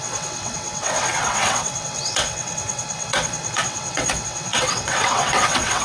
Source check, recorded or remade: remade